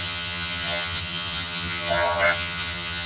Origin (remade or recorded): remade